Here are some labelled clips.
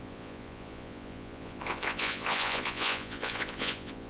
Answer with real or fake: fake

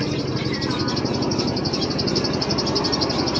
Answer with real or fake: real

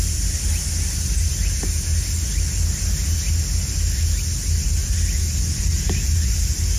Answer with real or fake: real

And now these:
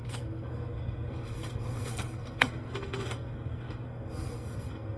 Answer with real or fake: fake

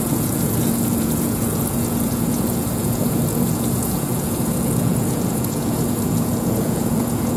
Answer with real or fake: fake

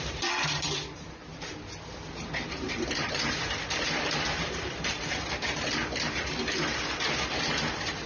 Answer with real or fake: fake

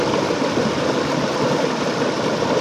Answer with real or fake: real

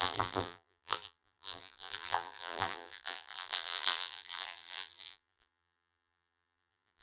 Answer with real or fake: fake